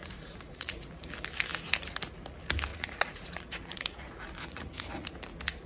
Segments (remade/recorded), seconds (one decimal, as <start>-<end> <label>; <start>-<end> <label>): 0.0-0.9 remade; 0.9-2.7 recorded; 2.7-5.1 remade; 5.1-5.7 recorded